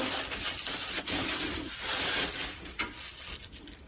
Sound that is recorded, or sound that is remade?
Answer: recorded